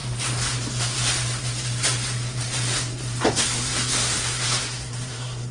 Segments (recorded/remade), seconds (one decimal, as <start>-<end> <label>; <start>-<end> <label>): 0.0-3.3 recorded; 3.3-5.5 remade